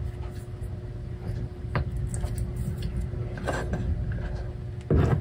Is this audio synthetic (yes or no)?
no